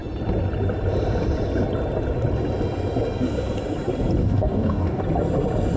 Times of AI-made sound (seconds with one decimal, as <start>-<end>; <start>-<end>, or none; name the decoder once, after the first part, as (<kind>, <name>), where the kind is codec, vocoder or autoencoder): 4.2-5.0 (codec, DAC)